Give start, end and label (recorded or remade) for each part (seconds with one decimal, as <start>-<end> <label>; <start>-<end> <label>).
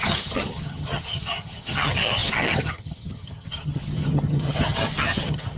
0.0-5.6 remade